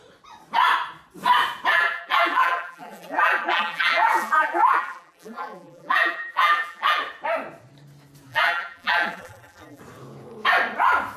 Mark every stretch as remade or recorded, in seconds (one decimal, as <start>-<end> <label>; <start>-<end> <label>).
0.0-1.7 recorded; 1.7-7.0 remade; 7.0-8.3 recorded; 8.3-9.8 remade; 9.8-11.2 recorded